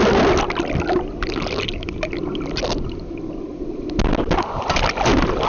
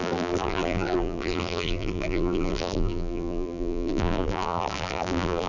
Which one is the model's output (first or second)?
second